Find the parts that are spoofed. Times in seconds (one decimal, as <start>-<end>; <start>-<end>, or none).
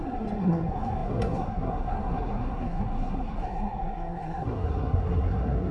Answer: 0.0-5.7